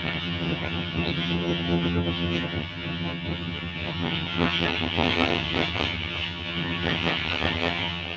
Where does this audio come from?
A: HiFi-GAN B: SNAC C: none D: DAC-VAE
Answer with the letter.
A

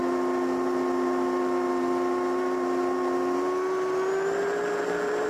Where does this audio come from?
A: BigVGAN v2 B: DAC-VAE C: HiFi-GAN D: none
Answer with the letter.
D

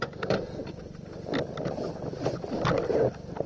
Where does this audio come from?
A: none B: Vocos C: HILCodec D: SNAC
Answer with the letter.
A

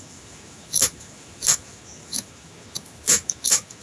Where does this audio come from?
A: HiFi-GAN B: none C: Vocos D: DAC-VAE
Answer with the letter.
D